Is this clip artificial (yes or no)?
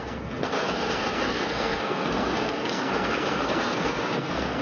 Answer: yes